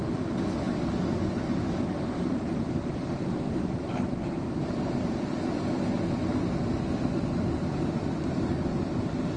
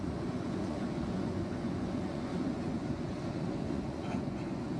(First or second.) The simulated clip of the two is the second